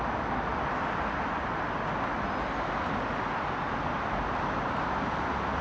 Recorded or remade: recorded